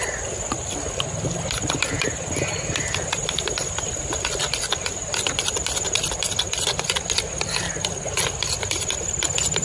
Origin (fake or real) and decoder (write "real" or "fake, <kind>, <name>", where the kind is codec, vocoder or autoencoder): real